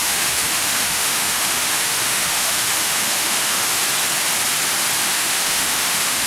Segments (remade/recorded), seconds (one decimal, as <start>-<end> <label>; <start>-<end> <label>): 0.0-3.8 remade; 3.8-5.0 recorded; 5.0-6.3 remade